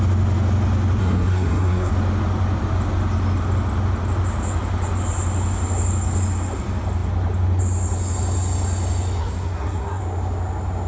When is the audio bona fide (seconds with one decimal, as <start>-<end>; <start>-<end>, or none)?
0.0-1.0; 1.9-9.2; 10.0-10.9